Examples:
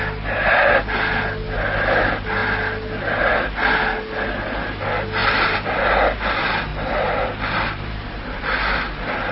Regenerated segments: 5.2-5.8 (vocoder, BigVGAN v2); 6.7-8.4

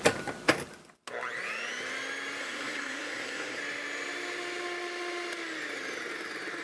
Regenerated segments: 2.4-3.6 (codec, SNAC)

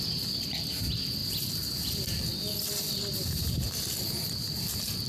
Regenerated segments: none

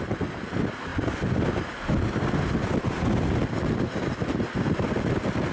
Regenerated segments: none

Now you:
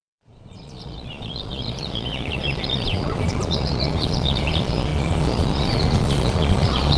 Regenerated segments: 0.0-7.0 (vocoder, Vocos)

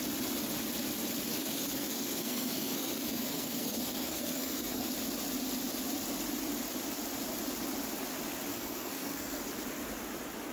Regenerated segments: 1.3-4.9 (codec, SNAC); 8.5-9.4

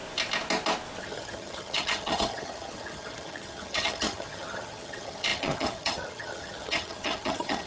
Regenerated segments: 1.0-7.7 (vocoder, HiFi-GAN)